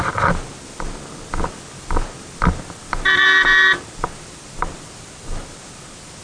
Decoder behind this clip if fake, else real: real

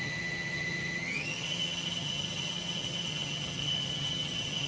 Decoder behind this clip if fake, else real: fake, vocoder, HiFi-GAN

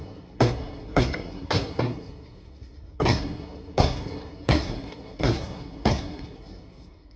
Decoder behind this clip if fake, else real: fake, codec, SNAC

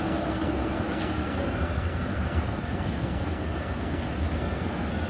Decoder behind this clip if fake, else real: fake, codec, SNAC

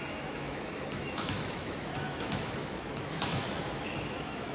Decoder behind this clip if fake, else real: fake, autoencoder, DAC-VAE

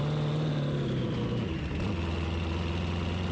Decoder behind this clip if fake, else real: real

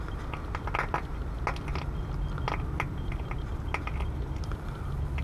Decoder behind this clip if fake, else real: real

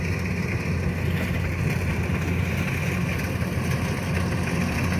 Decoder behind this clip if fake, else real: real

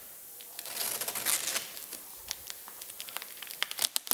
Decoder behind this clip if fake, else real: real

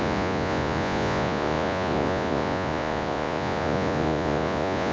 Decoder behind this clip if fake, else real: fake, vocoder, Vocos